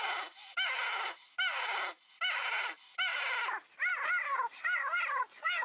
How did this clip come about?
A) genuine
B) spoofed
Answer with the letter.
A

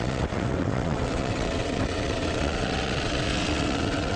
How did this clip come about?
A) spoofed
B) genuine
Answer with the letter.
A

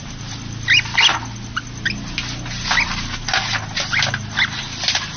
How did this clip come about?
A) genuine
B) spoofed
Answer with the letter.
A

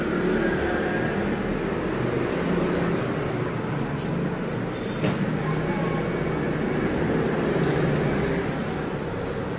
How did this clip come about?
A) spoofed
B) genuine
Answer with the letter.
B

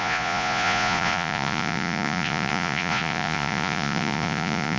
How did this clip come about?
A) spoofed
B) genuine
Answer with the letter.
A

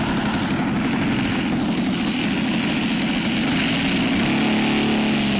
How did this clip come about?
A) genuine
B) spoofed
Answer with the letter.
A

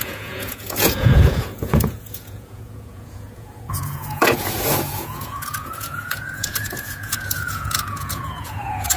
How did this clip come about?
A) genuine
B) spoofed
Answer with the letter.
B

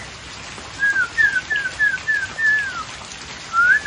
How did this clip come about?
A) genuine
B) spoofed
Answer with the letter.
A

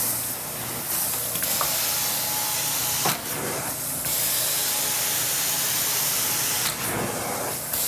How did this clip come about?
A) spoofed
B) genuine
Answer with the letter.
B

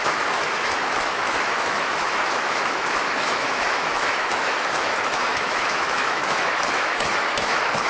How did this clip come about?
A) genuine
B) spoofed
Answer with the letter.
B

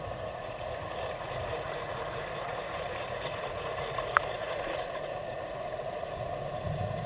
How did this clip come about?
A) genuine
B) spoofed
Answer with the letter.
B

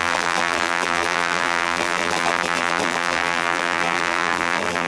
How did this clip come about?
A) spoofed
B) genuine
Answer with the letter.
A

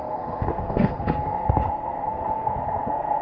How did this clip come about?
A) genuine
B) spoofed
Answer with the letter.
B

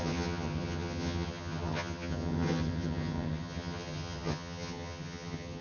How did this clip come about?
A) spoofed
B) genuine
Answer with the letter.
A